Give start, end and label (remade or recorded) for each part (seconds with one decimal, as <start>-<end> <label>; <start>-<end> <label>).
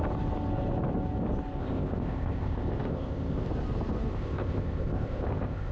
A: 0.0-1.6 recorded; 1.6-3.5 remade; 3.5-4.1 recorded; 4.1-5.7 remade